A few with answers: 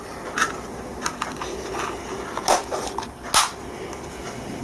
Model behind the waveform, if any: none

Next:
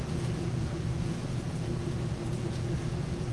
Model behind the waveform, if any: vocoder, Vocos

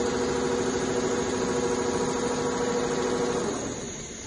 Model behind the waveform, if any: none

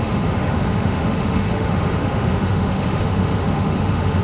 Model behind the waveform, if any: autoencoder, DAC-VAE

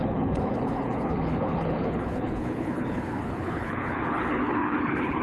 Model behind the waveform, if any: codec, HILCodec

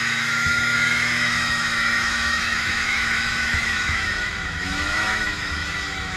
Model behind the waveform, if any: autoencoder, DAC-VAE